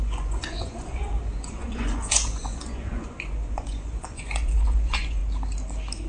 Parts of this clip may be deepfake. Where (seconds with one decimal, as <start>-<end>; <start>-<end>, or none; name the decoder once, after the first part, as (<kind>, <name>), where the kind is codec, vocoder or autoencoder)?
0.0-5.2 (vocoder, Vocos)